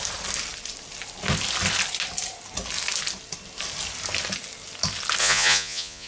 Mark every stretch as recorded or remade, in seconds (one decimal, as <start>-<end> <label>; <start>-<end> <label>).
0.0-5.2 recorded; 5.2-6.1 remade